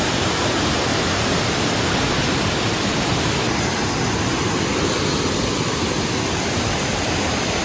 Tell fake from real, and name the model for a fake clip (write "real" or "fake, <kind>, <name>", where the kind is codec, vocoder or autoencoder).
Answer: real